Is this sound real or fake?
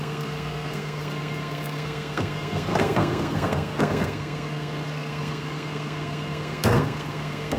fake